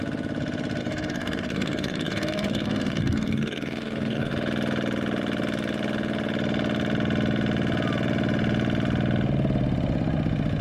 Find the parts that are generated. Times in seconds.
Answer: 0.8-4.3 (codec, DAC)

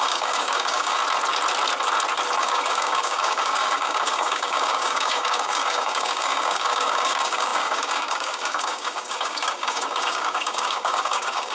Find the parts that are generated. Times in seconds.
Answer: 0.0-1.0 (codec, DAC); 2.4-11.5

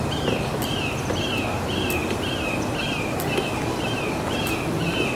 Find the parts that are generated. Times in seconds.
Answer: none

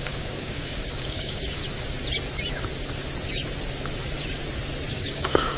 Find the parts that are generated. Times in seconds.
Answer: 0.0-1.6 (codec, DAC); 4.9-5.6

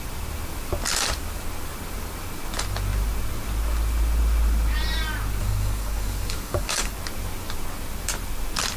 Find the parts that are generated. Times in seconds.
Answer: 5.4-6.9 (codec, DAC)

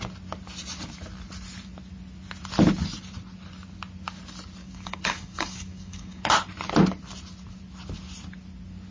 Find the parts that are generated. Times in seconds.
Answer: 4.6-6.2 (codec, DAC)

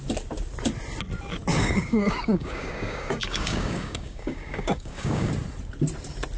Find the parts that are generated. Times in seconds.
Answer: 1.5-5.3 (codec, DAC)

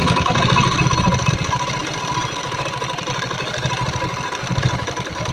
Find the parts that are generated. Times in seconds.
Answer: none